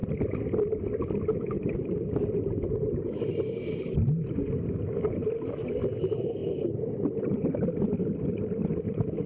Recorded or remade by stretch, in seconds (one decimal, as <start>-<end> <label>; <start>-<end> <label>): 0.0-5.2 recorded; 5.2-5.9 remade; 5.9-6.4 recorded; 6.4-7.8 remade; 7.8-9.3 recorded